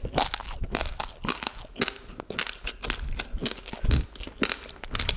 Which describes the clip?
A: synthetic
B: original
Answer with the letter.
B